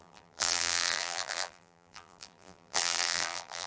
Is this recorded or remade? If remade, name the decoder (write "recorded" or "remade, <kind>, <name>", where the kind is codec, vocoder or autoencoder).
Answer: remade, vocoder, BigVGAN v2